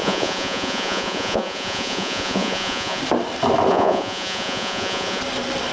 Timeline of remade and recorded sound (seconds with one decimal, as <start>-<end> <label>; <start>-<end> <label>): 0.0-3.0 remade; 3.0-3.7 recorded; 3.7-5.2 remade; 5.2-5.7 recorded

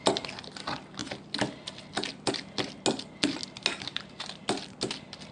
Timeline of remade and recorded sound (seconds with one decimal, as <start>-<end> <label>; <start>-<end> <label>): 0.0-3.9 recorded; 3.9-4.6 remade; 4.6-5.3 recorded

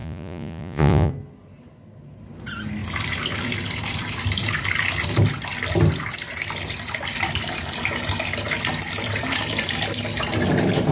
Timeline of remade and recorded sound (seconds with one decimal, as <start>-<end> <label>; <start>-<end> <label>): 0.0-1.1 remade; 1.1-10.9 recorded

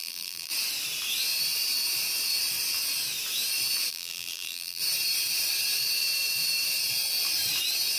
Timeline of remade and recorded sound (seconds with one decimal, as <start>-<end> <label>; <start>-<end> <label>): 0.0-0.5 remade; 0.5-3.9 recorded; 3.9-4.8 remade; 4.8-8.0 recorded

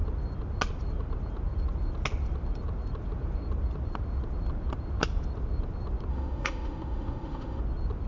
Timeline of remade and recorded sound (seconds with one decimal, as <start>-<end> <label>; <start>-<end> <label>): 0.0-6.1 recorded; 6.1-7.6 remade; 7.6-8.1 recorded

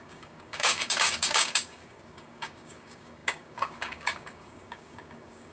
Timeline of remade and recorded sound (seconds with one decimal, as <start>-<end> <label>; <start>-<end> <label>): 0.0-5.5 remade